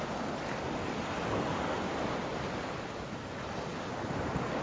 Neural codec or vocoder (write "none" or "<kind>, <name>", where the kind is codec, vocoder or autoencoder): none